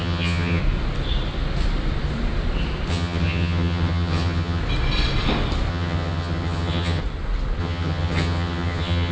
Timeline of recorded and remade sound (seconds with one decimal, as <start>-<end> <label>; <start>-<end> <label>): 0.0-0.6 remade; 0.6-2.9 recorded; 2.9-4.6 remade; 4.6-5.7 recorded; 5.7-7.0 remade; 7.0-7.6 recorded; 7.6-9.1 remade